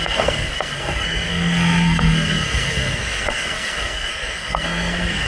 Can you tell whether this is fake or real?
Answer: fake